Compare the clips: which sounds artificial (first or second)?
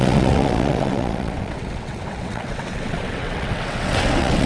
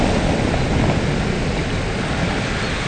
first